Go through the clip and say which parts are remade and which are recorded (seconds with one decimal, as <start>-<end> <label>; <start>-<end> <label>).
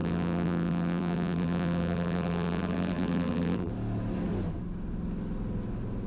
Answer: 0.0-3.7 remade; 3.7-6.1 recorded